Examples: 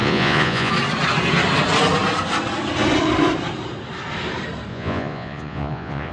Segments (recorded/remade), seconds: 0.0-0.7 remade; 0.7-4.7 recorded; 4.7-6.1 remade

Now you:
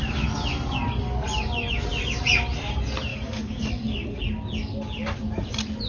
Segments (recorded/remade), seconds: 0.0-3.1 recorded; 3.1-4.2 remade; 4.2-5.9 recorded

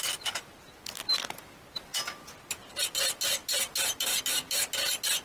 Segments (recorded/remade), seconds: 0.0-5.2 recorded

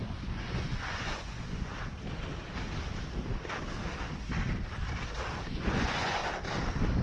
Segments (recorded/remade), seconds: 0.0-1.7 remade; 1.7-5.5 recorded; 5.5-6.2 remade; 6.2-7.0 recorded

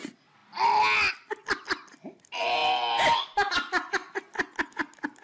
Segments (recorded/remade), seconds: 0.0-5.2 recorded

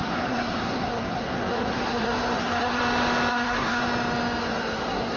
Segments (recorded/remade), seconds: 0.0-2.8 remade; 2.8-3.3 recorded; 3.3-3.8 remade; 3.8-4.4 recorded; 4.4-5.2 remade